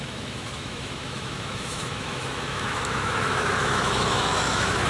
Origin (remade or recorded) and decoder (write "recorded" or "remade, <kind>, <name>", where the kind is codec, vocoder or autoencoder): remade, autoencoder, DAC-VAE